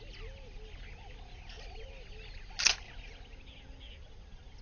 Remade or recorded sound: recorded